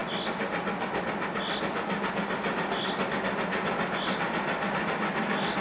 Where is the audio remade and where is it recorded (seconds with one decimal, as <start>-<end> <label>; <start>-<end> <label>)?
0.0-5.6 recorded